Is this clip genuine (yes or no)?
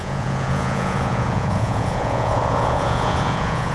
no